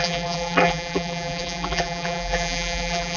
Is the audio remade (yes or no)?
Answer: yes